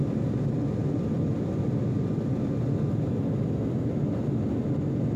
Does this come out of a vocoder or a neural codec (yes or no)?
no